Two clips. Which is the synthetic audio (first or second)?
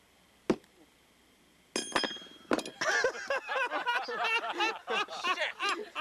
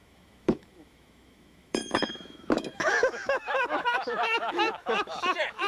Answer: second